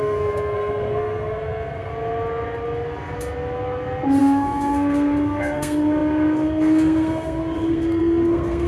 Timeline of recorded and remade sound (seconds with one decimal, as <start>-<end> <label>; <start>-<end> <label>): 0.0-1.9 remade; 1.9-4.2 recorded; 4.2-8.7 remade